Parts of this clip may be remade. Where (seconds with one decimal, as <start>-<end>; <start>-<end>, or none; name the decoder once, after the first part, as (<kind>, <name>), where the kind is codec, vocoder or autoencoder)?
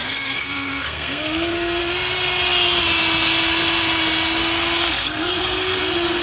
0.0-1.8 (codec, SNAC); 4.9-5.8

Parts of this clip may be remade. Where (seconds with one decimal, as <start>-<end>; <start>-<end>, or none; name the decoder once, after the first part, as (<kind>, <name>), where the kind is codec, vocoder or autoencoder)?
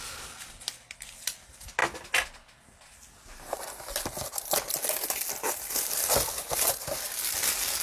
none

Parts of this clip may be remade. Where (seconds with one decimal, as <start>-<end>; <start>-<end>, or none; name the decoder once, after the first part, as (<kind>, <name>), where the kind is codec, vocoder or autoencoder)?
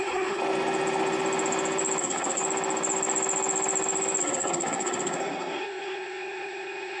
0.0-0.4 (codec, SNAC); 2.0-2.4; 4.2-7.0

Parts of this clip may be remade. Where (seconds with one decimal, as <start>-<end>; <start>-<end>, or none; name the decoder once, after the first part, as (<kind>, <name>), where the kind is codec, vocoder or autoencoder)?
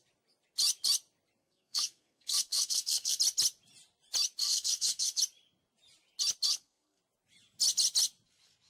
1.4-3.2 (codec, SNAC); 4.4-5.2; 6.5-7.0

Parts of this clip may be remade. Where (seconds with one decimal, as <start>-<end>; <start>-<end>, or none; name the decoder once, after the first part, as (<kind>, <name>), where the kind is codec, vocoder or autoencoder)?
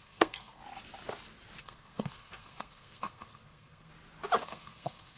0.0-0.6 (codec, SNAC); 1.6-3.9; 4.4-5.2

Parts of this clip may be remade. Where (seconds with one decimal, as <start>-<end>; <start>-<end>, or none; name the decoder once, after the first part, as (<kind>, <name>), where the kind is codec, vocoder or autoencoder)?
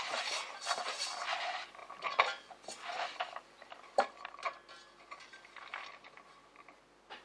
none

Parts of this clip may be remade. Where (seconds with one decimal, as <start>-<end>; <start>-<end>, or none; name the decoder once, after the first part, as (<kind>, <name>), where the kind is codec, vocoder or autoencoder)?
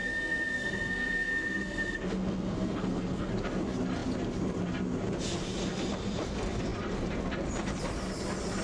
0.0-3.3 (codec, SNAC)